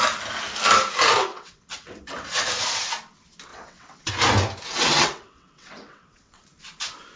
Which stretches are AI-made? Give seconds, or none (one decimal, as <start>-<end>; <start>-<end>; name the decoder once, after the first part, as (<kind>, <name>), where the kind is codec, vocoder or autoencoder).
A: 1.3-2.0 (vocoder, WaveNeXt); 3.5-4.1; 4.7-6.4